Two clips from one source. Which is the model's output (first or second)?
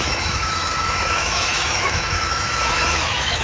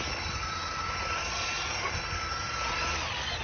first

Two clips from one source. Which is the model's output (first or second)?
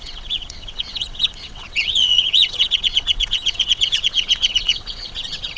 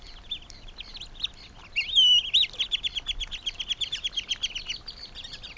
first